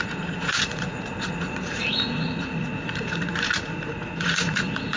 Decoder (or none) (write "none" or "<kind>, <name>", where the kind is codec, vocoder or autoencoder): vocoder, Vocos